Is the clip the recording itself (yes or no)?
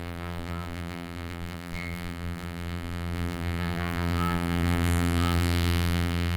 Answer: no